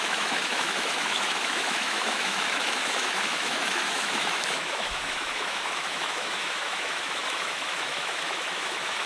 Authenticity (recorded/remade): remade